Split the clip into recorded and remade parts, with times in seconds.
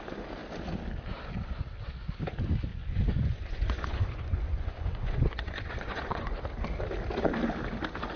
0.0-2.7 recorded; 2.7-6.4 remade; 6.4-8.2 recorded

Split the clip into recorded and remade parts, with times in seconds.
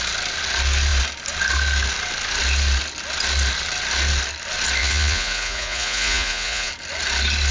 0.0-4.8 recorded; 4.8-6.7 remade; 6.7-7.5 recorded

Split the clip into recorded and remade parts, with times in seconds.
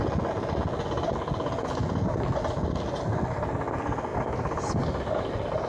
0.0-4.1 recorded; 4.1-5.3 remade; 5.3-5.7 recorded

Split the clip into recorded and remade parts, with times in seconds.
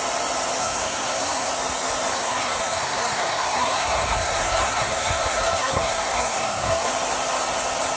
0.0-0.6 recorded; 0.6-1.5 remade; 1.5-2.1 recorded; 2.1-6.9 remade; 6.9-8.0 recorded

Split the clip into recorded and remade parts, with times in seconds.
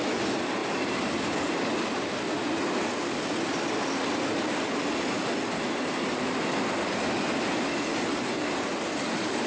0.0-9.5 recorded